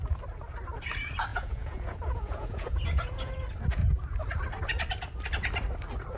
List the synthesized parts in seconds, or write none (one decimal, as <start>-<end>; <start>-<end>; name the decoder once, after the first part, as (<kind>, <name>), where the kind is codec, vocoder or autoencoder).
1.3-3.3 (vocoder, Vocos)